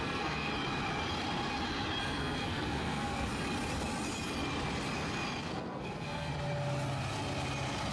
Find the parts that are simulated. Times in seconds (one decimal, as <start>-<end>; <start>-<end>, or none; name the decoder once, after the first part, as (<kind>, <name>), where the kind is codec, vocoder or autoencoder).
0.0-0.5 (codec, SNAC); 2.0-3.3; 5.4-6.3